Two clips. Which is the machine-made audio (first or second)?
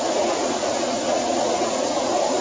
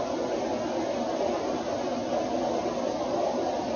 first